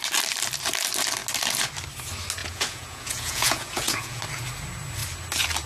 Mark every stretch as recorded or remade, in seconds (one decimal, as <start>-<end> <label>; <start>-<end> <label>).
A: 0.0-2.4 recorded; 2.4-4.2 remade; 4.2-5.7 recorded